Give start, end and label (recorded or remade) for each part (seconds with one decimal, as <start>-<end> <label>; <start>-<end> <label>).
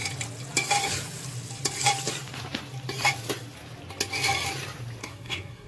0.0-5.0 recorded; 5.0-5.7 remade